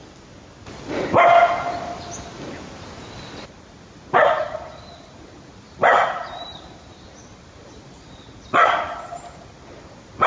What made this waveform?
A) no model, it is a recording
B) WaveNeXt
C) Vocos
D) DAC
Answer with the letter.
A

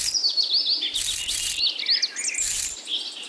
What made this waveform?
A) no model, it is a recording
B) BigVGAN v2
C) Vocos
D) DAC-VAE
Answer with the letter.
A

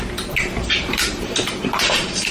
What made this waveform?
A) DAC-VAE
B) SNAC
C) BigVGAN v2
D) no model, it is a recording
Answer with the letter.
C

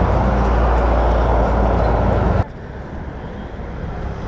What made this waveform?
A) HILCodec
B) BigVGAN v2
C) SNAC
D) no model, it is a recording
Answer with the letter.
D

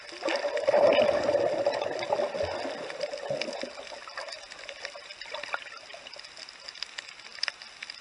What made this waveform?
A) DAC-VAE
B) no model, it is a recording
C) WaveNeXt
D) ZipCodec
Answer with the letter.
B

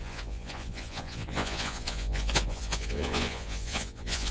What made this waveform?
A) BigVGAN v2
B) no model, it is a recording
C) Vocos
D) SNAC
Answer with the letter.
C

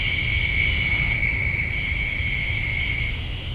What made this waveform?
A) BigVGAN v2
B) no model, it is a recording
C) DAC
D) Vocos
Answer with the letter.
B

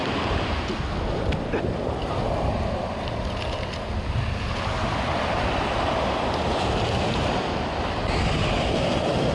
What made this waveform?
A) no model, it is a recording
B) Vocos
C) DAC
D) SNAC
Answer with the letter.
A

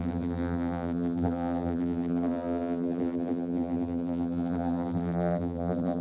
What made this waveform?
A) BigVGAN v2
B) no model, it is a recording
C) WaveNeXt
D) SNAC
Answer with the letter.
A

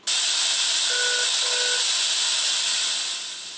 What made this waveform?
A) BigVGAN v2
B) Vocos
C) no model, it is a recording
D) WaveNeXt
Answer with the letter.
C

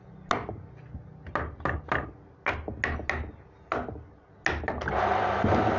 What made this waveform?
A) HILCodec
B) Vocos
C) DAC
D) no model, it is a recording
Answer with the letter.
D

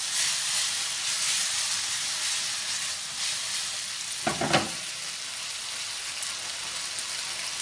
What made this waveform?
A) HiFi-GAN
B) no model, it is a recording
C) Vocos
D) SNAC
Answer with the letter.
B